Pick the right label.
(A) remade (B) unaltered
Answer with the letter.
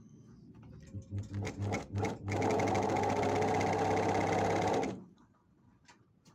B